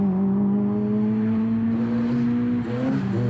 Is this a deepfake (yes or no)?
no